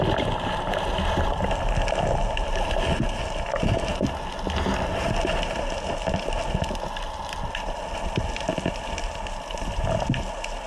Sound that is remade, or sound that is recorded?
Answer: recorded